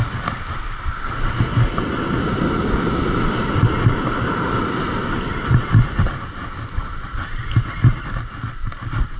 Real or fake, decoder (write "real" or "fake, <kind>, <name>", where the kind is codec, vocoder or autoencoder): real